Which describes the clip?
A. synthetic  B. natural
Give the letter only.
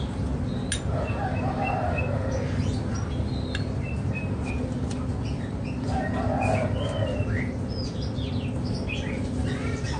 B